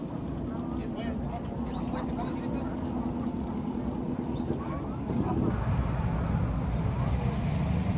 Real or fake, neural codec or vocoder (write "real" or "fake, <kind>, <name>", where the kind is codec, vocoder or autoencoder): real